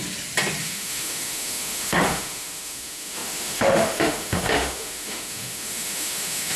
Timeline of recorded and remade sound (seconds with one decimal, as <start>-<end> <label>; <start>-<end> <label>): 0.0-0.6 recorded; 0.6-6.6 remade